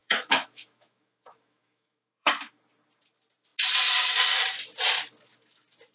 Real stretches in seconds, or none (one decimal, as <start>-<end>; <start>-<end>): 2.3-5.9